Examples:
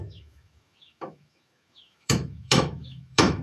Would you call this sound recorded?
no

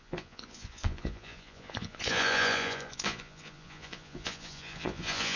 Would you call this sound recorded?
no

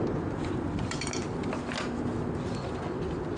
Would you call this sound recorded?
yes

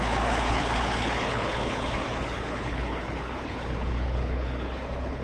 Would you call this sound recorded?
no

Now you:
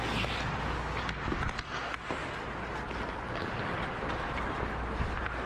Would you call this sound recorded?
yes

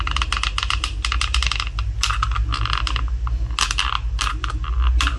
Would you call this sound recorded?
yes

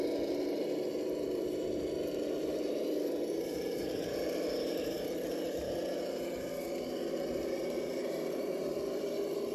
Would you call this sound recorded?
no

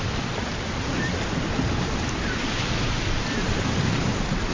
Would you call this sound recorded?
yes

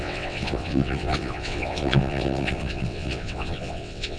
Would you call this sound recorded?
no